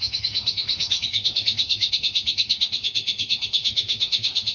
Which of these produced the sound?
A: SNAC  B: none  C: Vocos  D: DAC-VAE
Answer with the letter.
D